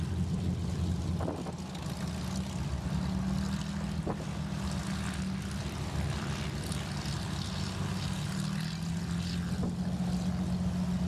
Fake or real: real